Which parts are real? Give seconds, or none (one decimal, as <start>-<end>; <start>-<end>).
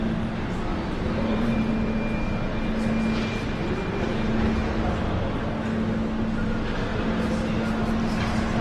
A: 0.0-0.7; 1.6-8.6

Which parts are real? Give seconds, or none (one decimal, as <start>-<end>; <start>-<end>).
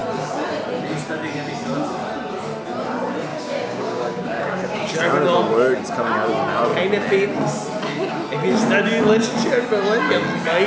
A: 0.0-3.3; 5.0-10.7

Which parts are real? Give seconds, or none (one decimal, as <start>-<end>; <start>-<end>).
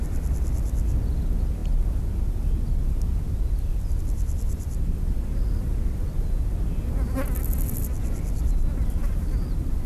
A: 0.0-9.0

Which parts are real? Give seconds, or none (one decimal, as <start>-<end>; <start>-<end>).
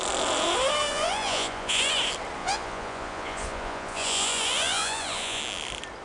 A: 0.0-0.9; 2.0-2.4; 5.4-6.0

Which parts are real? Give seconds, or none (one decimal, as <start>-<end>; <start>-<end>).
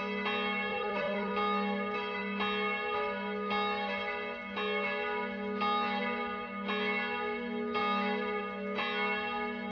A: 0.0-0.7; 1.3-9.7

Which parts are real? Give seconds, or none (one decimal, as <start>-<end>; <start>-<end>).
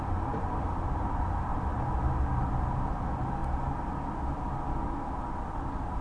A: 0.0-1.5; 2.1-6.0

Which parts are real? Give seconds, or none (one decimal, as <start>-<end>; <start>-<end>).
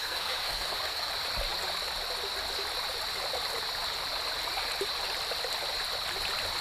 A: 1.1-6.6